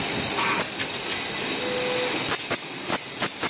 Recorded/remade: recorded